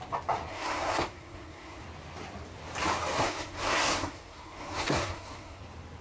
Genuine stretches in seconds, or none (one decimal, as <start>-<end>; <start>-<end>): 0.0-0.5; 1.8-3.2; 5.6-6.0